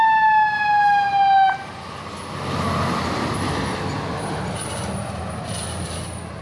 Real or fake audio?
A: real